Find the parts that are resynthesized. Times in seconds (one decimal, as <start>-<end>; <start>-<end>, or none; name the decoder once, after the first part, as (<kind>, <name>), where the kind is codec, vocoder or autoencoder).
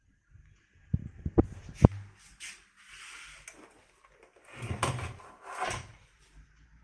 none